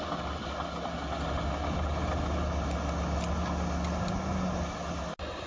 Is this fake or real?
real